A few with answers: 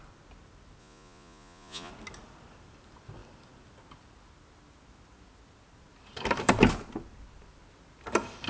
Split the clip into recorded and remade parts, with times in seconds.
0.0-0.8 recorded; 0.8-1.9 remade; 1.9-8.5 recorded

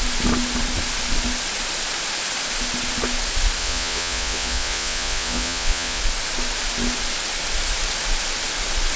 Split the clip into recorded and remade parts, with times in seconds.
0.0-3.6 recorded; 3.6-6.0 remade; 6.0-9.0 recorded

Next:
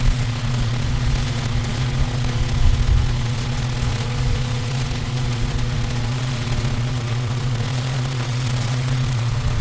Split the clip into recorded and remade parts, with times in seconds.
0.0-9.6 remade

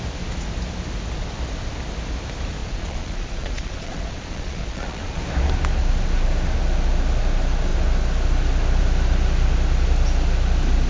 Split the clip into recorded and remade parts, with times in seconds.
0.0-2.6 recorded; 2.6-5.2 remade; 5.2-10.9 recorded